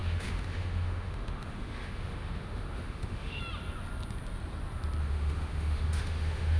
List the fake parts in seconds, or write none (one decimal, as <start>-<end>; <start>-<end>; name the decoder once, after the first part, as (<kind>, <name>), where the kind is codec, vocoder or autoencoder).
0.0-3.4 (autoencoder, DAC-VAE); 5.0-6.6